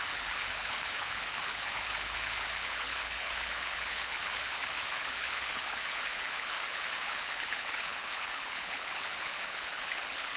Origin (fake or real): fake